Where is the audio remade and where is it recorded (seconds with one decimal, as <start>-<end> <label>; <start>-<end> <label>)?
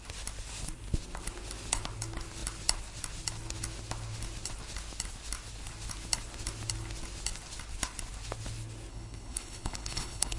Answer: 0.0-8.9 recorded; 8.9-10.4 remade